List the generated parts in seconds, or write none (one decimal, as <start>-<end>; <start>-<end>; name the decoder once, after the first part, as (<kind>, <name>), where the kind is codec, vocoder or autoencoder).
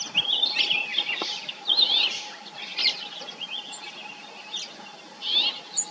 none